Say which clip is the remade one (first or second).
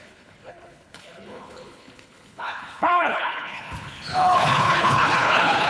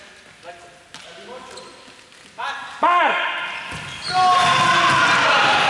first